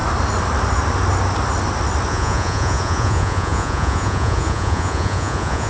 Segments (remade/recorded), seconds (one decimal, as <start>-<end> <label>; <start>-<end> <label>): 0.0-2.1 recorded; 2.1-5.7 remade